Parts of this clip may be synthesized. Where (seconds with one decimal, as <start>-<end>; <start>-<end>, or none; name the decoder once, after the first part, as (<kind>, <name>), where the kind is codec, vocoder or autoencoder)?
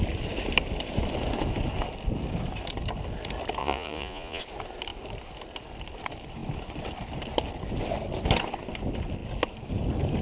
3.6-4.4 (vocoder, Vocos)